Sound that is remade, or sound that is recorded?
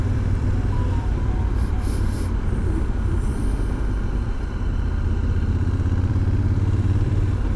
remade